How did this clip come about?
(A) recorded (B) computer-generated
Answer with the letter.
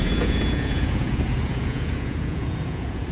B